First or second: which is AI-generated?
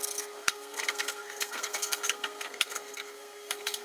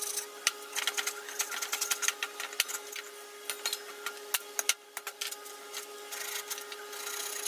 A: first